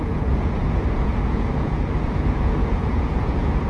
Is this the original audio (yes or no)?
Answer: no